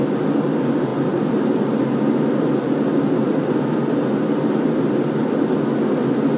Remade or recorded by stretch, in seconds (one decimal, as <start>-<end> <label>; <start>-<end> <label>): 0.0-6.4 recorded